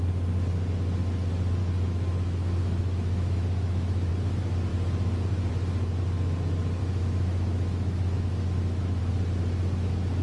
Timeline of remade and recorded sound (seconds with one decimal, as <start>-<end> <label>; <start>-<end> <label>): 0.0-1.6 recorded; 1.6-4.1 remade; 4.1-6.8 recorded; 6.8-9.0 remade; 9.0-10.2 recorded